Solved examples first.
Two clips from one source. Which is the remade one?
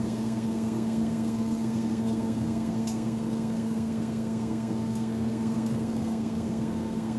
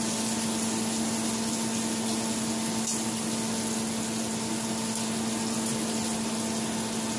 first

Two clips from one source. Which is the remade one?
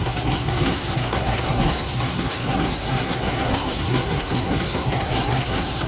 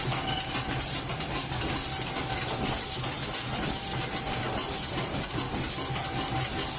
first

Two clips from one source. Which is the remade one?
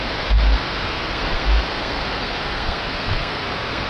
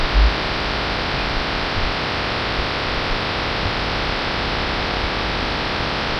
first